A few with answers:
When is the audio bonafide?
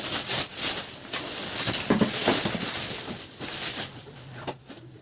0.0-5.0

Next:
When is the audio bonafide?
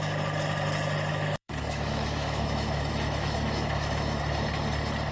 0.0-1.1; 4.2-5.1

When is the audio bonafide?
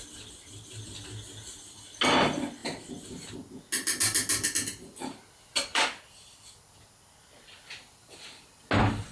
0.0-9.1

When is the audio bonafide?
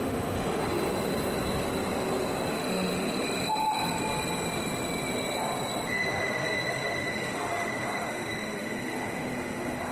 0.6-2.5; 4.0-5.9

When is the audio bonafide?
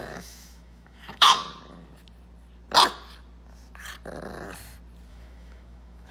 1.4-5.1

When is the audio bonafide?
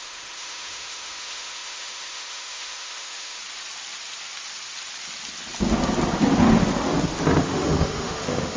3.4-7.4